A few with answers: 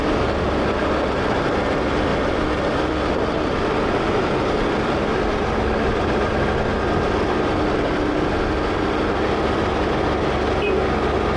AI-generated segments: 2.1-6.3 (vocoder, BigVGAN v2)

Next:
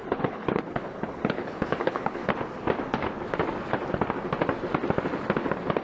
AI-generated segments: 0.0-2.2 (codec, HILCodec)